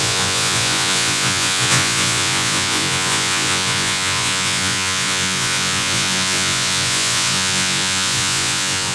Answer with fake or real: fake